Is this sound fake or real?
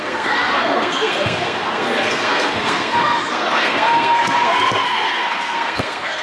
fake